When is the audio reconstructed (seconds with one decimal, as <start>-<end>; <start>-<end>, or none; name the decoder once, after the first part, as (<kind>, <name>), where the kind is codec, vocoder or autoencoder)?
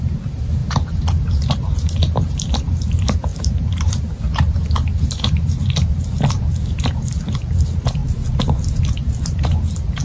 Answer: 0.0-8.0 (vocoder, BigVGAN v2); 8.8-10.0